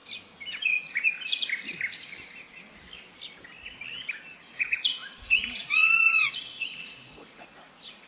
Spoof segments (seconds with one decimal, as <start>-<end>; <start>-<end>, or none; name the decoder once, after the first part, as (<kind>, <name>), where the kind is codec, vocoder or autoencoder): 0.6-1.1 (vocoder, Vocos); 4.4-8.1